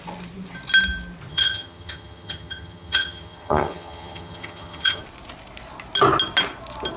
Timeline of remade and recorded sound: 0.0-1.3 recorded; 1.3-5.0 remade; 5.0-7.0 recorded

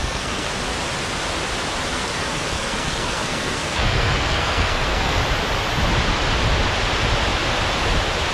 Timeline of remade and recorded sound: 0.0-0.5 remade; 0.5-1.9 recorded; 1.9-5.2 remade; 5.2-8.3 recorded